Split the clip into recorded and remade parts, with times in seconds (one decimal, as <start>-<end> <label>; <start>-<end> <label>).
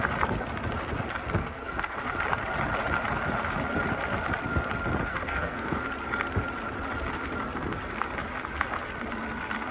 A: 0.0-1.4 recorded; 1.4-2.0 remade; 2.0-5.1 recorded; 5.1-5.8 remade; 5.8-9.7 recorded